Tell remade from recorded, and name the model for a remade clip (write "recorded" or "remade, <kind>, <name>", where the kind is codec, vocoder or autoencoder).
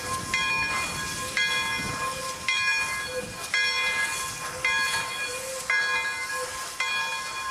recorded